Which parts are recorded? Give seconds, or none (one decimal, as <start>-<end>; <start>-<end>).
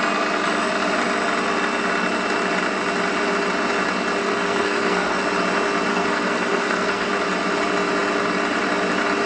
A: 0.0-4.2; 5.2-5.9; 7.1-9.3